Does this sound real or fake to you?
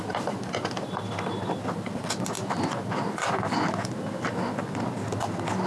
real